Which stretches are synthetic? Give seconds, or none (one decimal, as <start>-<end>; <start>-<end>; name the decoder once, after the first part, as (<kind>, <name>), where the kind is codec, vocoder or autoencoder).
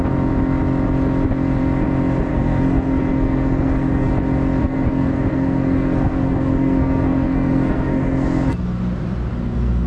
2.3-4.1 (codec, SNAC); 4.6-8.8; 9.3-9.9